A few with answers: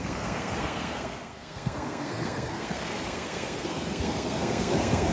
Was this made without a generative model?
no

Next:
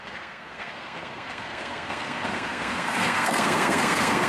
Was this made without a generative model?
no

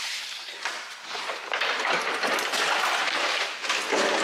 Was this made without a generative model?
yes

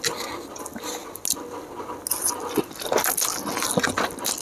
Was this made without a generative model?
yes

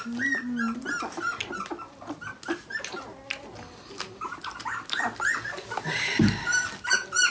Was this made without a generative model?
yes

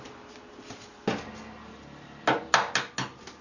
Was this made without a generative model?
yes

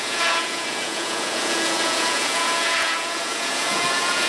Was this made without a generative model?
no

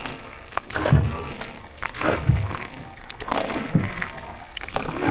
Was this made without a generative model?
no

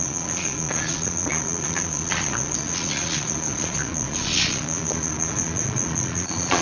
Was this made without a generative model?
no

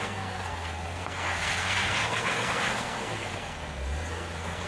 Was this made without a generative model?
no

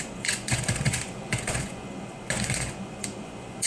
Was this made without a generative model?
no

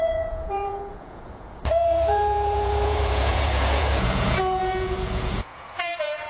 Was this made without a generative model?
no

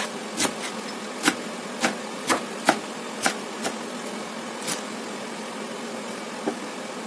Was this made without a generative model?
yes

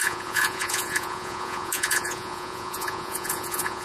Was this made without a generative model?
no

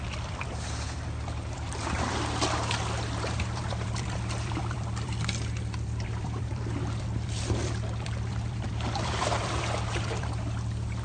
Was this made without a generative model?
no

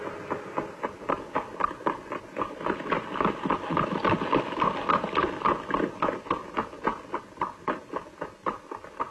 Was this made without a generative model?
yes